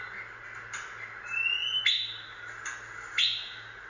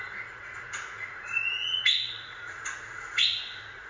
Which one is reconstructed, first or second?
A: second